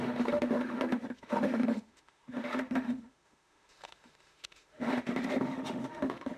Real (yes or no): no